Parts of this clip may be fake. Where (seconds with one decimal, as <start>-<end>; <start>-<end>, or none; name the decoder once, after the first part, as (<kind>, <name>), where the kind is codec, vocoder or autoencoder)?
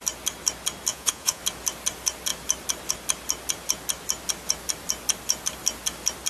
0.9-1.4 (vocoder, Vocos)